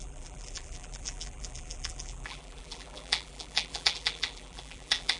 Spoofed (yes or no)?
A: yes